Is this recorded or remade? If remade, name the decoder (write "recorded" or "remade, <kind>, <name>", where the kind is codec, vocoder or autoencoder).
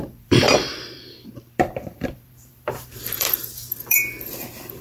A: remade, vocoder, BigVGAN v2